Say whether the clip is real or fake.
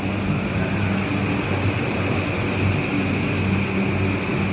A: real